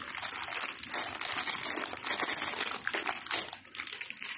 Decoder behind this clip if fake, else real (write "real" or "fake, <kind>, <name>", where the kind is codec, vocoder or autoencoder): real